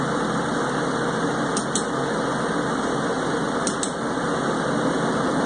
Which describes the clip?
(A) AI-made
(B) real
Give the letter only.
B